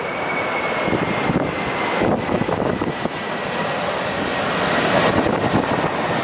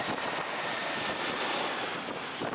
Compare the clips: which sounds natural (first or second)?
second